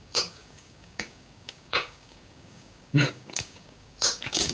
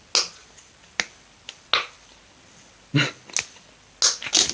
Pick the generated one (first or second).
first